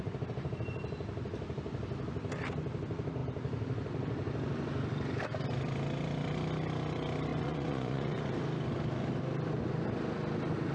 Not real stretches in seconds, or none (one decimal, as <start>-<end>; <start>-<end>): 7.3-8.3